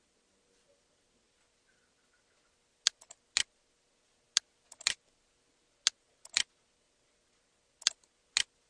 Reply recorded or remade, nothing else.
recorded